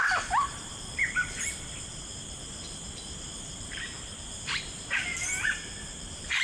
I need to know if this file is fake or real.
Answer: fake